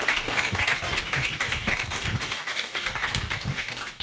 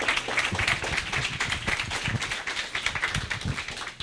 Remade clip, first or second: first